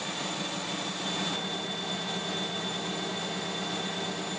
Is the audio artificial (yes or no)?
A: no